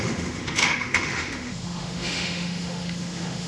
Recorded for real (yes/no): no